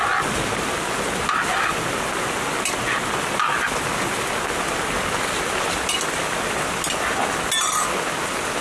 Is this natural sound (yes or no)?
yes